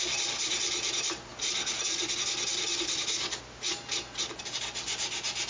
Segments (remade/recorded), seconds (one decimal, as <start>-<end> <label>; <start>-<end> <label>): 0.0-5.5 recorded